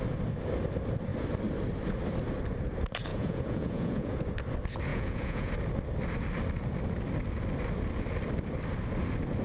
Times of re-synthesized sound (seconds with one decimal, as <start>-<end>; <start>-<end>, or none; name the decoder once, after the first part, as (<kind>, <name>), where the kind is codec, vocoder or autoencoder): 3.1-4.2 (vocoder, Vocos); 4.9-5.5